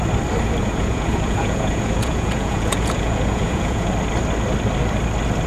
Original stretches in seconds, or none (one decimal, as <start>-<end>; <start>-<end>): 0.0-0.6; 3.9-5.5